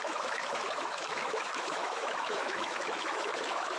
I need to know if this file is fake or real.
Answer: fake